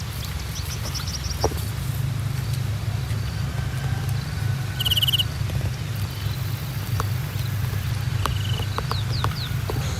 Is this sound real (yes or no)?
yes